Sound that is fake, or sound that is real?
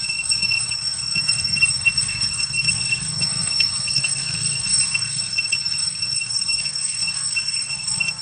fake